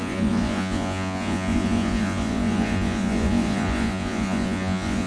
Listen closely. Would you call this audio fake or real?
fake